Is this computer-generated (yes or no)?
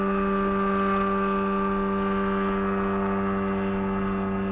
no